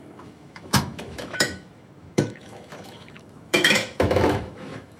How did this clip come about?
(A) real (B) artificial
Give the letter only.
B